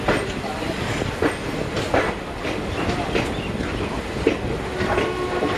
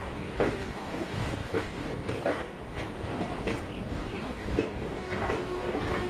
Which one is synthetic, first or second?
second